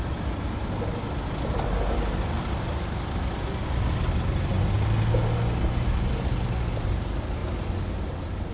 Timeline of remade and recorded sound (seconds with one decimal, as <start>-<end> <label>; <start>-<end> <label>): 0.0-8.5 recorded